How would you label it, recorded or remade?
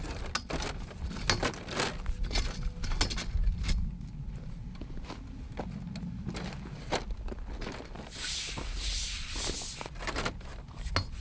recorded